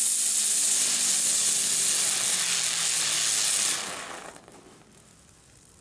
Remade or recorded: recorded